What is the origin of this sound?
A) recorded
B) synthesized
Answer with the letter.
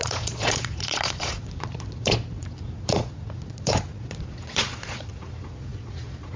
B